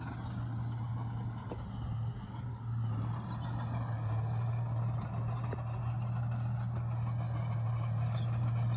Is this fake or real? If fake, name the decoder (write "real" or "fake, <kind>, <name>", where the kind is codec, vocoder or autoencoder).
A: real